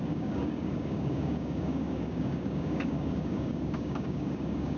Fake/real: fake